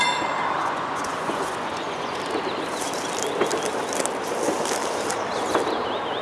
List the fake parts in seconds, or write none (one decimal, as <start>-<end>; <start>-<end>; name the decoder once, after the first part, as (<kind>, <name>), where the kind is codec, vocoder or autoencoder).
0.6-2.2 (vocoder, Vocos)